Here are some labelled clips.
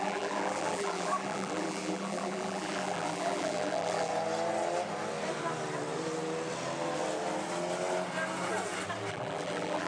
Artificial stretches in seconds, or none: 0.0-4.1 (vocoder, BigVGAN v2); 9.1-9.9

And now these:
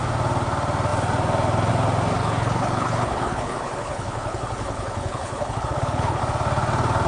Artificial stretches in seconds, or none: 2.2-6.2 (codec, HILCodec)

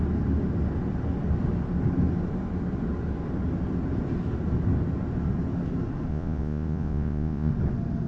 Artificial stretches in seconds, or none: 6.1-7.5 (vocoder, Vocos)